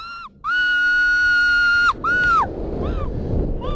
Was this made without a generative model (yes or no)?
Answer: yes